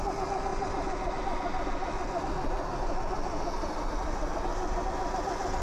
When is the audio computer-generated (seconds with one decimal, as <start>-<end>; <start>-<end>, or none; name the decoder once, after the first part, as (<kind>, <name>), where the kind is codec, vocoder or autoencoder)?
0.5-1.1 (vocoder, BigVGAN v2)